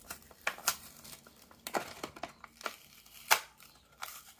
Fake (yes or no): no